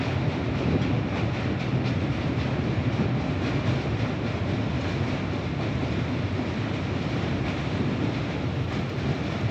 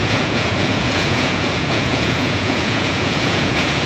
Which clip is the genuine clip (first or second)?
first